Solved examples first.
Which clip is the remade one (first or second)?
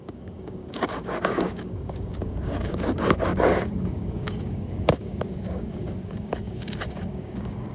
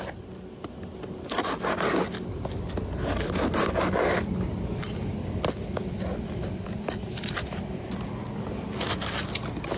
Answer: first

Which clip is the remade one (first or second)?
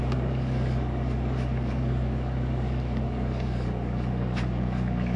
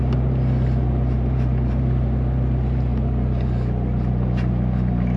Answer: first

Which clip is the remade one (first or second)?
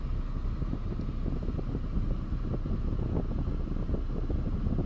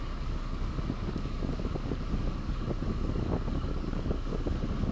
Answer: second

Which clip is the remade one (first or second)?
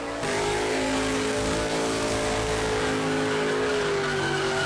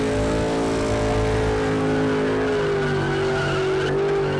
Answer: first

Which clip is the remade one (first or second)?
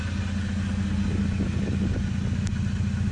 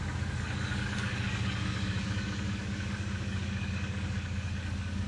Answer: second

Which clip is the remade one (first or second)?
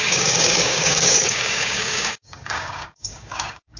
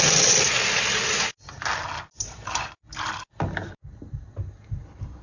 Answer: first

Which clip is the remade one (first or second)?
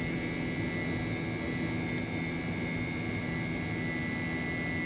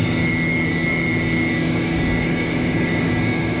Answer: second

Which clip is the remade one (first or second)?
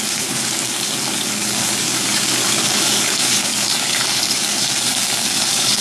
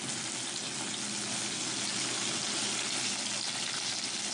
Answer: first